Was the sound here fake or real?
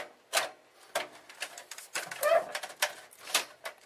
real